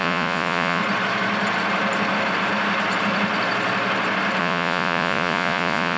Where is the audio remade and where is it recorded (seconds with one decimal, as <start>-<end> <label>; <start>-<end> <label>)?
0.0-0.8 remade; 0.8-4.4 recorded; 4.4-6.0 remade